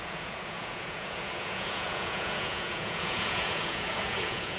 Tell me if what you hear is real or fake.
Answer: fake